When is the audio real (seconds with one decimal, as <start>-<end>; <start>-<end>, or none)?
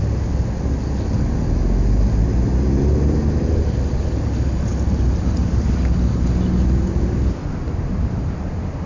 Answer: 0.0-8.9